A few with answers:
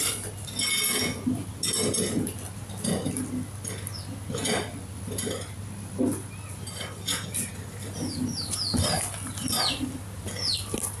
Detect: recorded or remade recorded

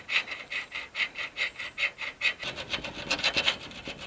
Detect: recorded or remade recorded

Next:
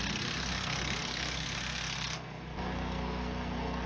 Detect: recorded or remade remade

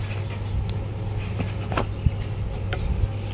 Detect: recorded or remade recorded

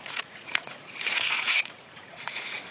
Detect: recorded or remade remade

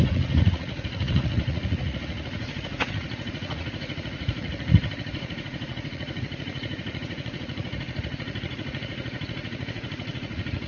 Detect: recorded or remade remade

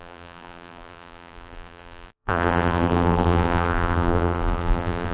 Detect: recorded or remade remade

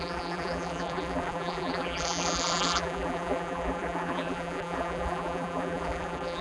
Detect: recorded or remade remade